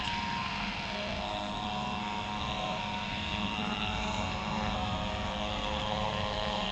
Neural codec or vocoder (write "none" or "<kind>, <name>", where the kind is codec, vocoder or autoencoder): codec, SNAC